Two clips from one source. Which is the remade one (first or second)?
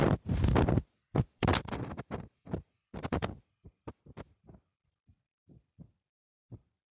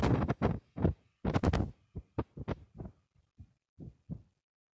first